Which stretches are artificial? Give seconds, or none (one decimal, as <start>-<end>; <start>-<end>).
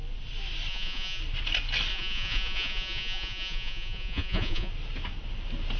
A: 0.7-1.2; 1.9-4.7